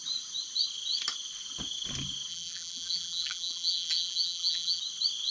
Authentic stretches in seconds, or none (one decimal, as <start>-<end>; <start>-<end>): 0.0-2.3; 4.8-5.3